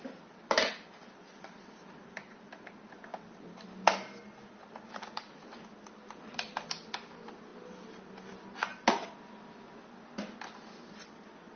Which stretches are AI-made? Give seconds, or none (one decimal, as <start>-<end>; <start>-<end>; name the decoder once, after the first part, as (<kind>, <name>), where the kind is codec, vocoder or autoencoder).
none